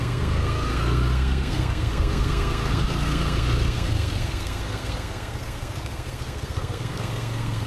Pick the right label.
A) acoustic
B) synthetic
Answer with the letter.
B